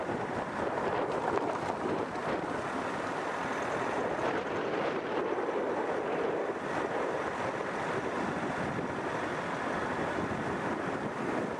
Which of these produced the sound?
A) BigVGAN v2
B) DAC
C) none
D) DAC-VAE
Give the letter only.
C